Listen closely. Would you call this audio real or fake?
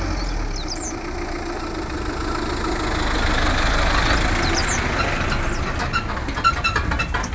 real